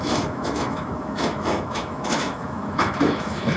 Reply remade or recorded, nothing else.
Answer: remade